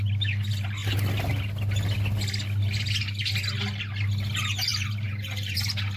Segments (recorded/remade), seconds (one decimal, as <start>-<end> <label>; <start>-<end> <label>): 0.0-4.7 recorded; 4.7-6.0 remade